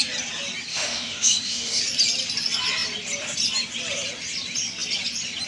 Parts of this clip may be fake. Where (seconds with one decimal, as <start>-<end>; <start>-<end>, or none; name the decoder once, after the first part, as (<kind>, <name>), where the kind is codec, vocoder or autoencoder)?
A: 0.7-1.8 (autoencoder, DAC-VAE)